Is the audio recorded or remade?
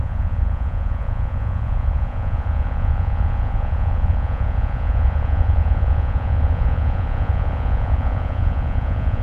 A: remade